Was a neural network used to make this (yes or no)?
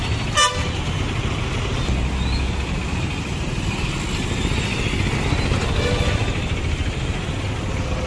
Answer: no